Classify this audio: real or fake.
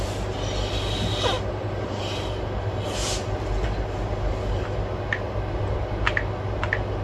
real